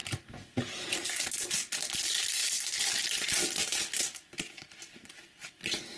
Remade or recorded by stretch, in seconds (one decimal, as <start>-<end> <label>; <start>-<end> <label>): 0.0-6.0 recorded

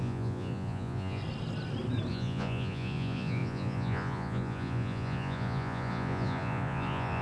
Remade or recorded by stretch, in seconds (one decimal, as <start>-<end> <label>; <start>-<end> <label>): 0.0-1.2 remade; 1.2-2.1 recorded; 2.1-7.2 remade